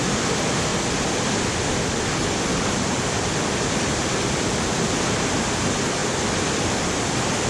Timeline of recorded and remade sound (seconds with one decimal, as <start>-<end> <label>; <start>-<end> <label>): 0.0-0.7 recorded; 0.7-3.1 remade; 3.1-6.0 recorded; 6.0-6.5 remade; 6.5-7.5 recorded

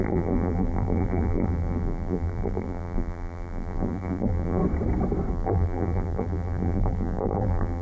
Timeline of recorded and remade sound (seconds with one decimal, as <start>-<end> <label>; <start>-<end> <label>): 0.0-4.6 remade; 4.6-5.3 recorded; 5.3-7.8 remade